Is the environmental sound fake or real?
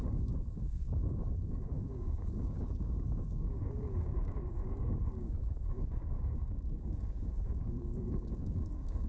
fake